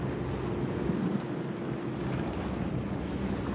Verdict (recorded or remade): recorded